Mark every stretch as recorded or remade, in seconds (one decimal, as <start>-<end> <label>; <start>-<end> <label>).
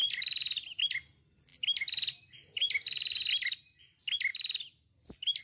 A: 0.0-0.8 remade; 0.8-5.4 recorded